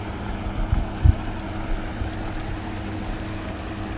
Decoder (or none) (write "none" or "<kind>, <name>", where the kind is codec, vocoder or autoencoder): none